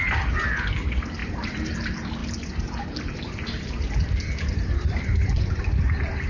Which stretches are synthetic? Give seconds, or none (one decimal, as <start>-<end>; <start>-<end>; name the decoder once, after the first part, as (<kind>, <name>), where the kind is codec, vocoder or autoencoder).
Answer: 1.2-1.7 (vocoder, BigVGAN v2); 2.2-6.3